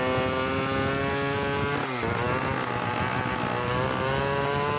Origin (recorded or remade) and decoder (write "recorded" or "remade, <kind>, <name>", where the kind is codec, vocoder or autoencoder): recorded